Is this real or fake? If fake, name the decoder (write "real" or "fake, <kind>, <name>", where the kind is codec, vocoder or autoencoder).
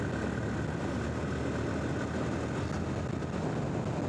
real